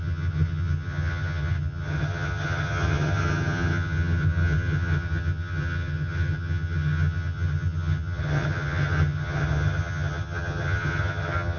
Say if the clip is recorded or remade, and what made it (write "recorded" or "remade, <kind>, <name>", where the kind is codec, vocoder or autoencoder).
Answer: remade, vocoder, HiFi-GAN